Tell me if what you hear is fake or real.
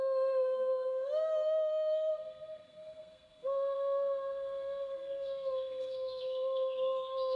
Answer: fake